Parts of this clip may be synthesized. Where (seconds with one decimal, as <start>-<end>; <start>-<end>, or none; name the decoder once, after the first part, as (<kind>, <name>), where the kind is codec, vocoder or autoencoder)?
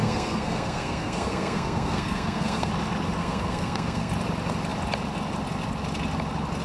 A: 0.0-2.7 (codec, SNAC); 3.2-4.1